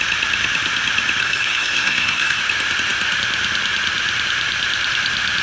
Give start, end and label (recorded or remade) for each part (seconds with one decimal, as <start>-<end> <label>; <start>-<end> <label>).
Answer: 0.0-1.2 recorded; 1.2-2.4 remade; 2.4-5.4 recorded